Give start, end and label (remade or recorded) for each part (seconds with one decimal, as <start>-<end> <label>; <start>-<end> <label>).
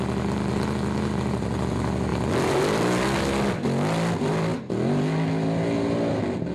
0.0-6.5 recorded